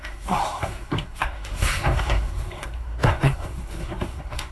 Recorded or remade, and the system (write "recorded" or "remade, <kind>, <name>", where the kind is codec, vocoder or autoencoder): remade, codec, SNAC